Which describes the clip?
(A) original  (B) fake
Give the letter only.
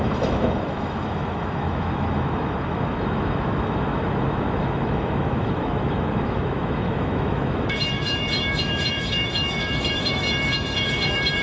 B